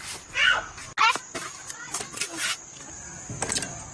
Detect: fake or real real